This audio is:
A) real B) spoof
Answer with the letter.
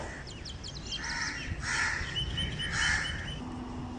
A